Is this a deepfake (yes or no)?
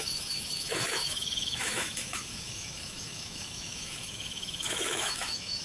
yes